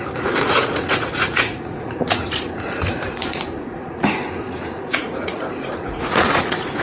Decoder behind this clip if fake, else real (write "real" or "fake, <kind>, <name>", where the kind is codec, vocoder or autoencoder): fake, vocoder, Vocos